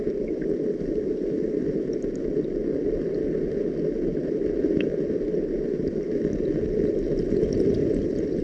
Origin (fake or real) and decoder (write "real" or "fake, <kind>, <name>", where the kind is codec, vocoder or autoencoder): real